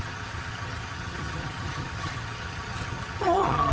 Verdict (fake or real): fake